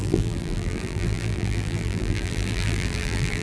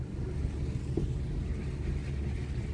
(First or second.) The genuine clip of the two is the second